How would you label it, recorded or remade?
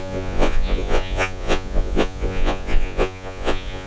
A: remade